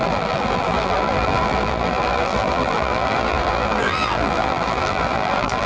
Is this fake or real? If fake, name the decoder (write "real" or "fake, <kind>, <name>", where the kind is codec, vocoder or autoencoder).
fake, vocoder, BigVGAN v2